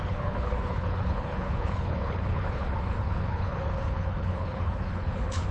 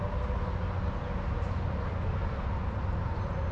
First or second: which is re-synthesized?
first